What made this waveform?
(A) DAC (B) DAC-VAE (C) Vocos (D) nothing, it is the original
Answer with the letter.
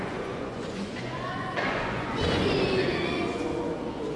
C